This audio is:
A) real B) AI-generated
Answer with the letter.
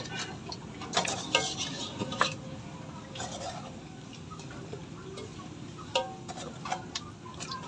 A